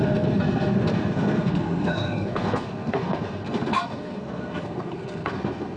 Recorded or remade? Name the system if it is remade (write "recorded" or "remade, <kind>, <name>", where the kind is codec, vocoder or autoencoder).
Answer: remade, codec, SNAC